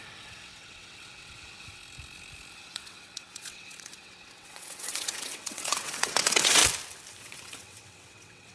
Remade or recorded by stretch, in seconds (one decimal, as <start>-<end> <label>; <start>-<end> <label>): 0.0-1.8 remade; 1.8-2.5 recorded; 2.5-6.6 remade; 6.6-7.2 recorded; 7.2-8.5 remade